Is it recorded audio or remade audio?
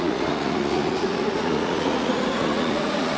remade